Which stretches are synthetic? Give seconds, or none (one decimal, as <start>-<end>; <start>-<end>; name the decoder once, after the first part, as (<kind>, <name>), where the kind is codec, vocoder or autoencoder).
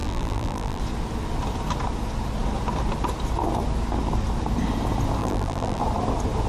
0.0-0.8 (vocoder, BigVGAN v2); 5.2-5.8